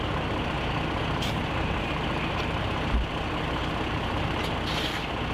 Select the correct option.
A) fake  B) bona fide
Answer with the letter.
B